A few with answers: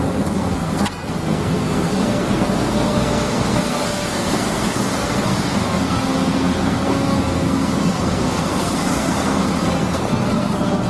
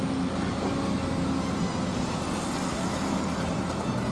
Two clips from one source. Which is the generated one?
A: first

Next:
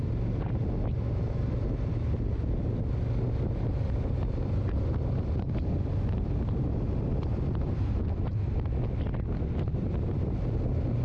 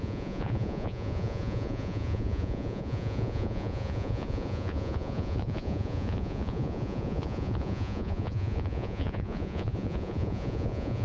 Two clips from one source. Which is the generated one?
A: second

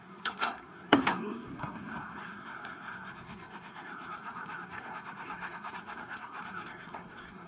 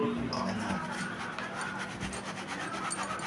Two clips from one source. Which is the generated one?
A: first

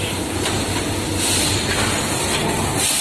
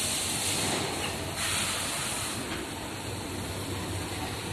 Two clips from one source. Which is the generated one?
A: second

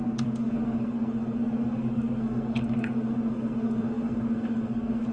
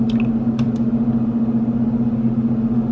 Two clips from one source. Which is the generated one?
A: first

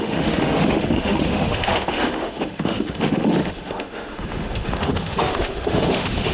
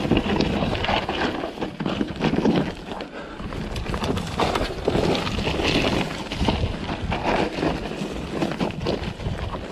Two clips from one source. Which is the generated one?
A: first